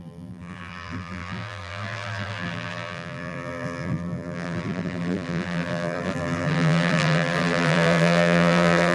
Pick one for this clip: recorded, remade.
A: remade